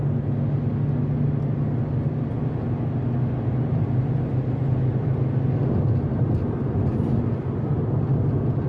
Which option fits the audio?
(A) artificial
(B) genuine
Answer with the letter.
B